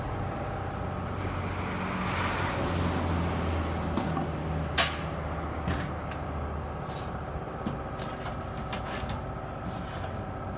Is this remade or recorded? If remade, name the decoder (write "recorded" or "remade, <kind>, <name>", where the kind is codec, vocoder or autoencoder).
recorded